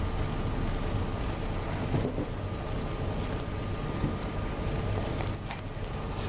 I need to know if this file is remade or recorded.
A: recorded